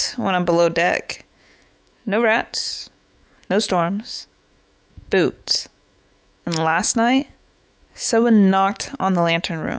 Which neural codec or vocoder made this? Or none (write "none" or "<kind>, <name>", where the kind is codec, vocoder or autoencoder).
autoencoder, DAC-VAE